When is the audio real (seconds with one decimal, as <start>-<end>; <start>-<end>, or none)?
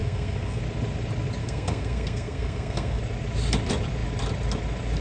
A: 0.6-1.4; 3.0-5.0